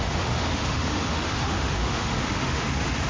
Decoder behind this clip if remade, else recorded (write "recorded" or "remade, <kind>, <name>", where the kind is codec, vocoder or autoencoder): remade, autoencoder, DAC-VAE